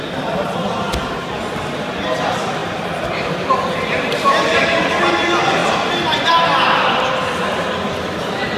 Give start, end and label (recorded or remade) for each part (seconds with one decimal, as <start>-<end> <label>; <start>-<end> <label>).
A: 0.0-2.6 recorded; 2.6-3.3 remade; 3.3-8.6 recorded